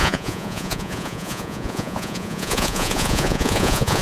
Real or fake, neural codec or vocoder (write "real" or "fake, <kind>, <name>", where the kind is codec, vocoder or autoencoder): fake, vocoder, Vocos